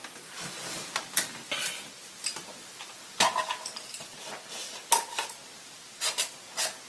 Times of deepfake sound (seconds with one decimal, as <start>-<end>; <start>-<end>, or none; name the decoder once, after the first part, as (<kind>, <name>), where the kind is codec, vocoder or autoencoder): 0.0-1.4 (vocoder, BigVGAN v2); 2.3-3.4